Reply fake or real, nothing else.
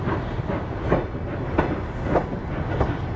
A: real